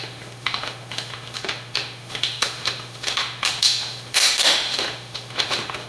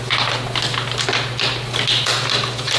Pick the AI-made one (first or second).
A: first